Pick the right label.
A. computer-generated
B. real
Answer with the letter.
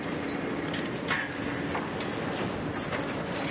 B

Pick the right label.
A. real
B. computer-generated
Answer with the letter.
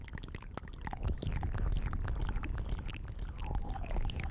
A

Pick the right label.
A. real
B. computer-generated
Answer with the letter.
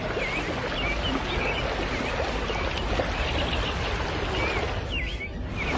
A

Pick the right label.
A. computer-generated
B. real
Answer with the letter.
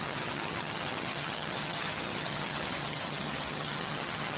A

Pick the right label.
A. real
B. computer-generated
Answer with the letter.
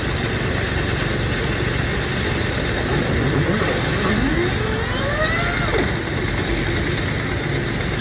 A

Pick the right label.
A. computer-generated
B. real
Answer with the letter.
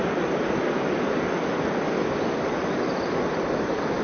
B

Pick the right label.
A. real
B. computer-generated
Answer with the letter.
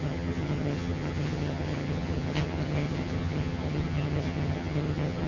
B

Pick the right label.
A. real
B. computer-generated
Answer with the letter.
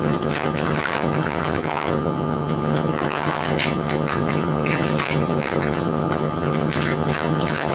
B